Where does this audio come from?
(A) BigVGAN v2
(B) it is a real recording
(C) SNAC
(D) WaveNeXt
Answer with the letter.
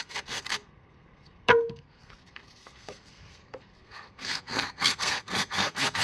C